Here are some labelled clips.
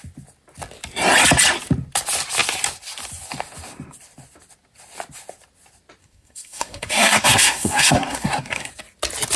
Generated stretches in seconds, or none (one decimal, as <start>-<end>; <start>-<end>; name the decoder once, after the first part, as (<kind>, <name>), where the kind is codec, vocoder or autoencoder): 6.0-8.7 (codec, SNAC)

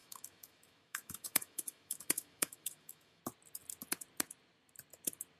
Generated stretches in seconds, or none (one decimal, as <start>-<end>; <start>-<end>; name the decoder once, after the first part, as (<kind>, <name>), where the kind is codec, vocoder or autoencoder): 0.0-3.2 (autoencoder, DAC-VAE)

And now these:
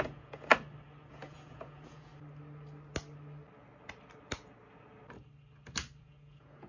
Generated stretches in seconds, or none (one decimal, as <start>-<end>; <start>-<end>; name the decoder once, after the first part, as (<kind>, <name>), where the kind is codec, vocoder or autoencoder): 0.0-0.5 (vocoder, Vocos); 1.1-2.1; 6.0-6.7

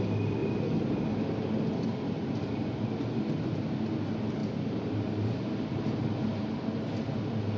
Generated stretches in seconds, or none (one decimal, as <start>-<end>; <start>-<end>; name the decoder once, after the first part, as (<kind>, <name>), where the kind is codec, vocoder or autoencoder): 4.4-5.8 (vocoder, BigVGAN v2)

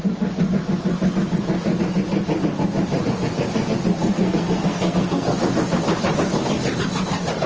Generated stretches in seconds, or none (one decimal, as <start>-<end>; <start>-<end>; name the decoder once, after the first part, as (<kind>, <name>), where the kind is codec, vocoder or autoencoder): 4.0-5.4 (codec, SNAC)